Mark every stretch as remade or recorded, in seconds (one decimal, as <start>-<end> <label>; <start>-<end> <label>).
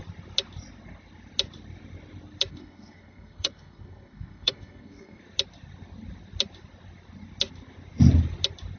0.0-2.5 recorded; 2.5-5.2 remade; 5.2-8.8 recorded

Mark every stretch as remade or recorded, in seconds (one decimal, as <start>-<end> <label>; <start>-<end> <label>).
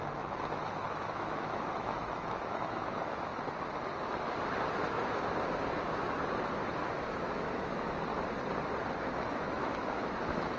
0.0-3.3 remade; 3.3-7.1 recorded; 7.1-8.1 remade; 8.1-9.0 recorded; 9.0-10.6 remade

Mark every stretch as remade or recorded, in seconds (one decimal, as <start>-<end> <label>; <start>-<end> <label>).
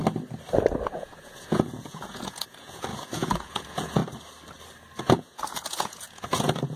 0.0-0.9 recorded; 0.9-4.0 remade; 4.0-5.0 recorded; 5.0-6.8 remade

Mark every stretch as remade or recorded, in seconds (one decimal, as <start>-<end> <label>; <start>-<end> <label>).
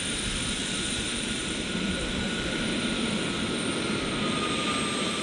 0.0-0.6 recorded; 0.6-2.6 remade; 2.6-5.2 recorded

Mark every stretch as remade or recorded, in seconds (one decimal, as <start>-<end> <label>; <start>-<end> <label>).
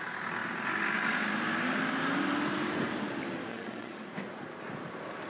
0.0-3.5 recorded; 3.5-4.0 remade; 4.0-5.3 recorded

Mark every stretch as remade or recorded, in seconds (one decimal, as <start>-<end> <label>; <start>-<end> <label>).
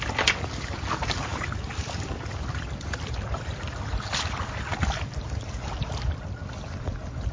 0.0-1.3 recorded; 1.3-4.4 remade; 4.4-7.3 recorded